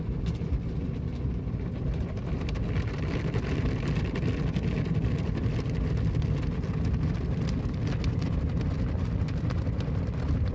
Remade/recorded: recorded